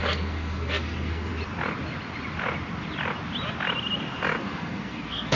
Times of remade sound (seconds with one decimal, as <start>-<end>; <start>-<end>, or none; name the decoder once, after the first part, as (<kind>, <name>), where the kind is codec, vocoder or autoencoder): 0.0-1.3 (codec, SNAC); 4.4-5.4